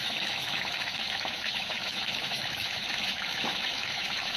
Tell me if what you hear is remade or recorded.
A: remade